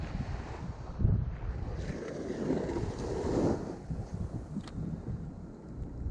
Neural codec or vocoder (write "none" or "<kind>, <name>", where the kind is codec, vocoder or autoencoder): none